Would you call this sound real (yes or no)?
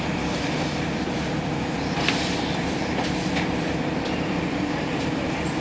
no